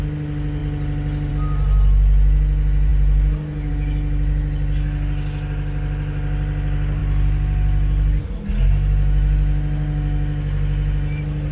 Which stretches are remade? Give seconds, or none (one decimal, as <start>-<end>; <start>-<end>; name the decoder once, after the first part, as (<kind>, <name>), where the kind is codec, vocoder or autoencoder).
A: none